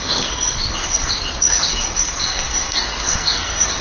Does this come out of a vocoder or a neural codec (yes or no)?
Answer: yes